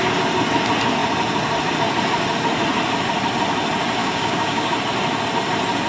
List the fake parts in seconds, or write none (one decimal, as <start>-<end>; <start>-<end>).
4.0-4.7